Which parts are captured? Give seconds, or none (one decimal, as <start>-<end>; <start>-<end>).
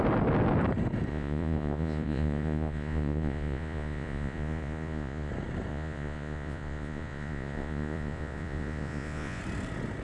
0.0-1.1; 5.3-5.7; 9.4-10.0